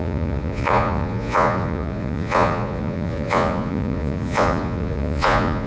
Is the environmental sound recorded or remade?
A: remade